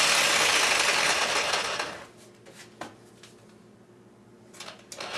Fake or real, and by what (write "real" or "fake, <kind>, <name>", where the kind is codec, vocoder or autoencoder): real